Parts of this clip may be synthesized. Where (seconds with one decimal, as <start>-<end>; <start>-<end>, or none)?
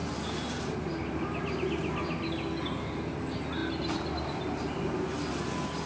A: none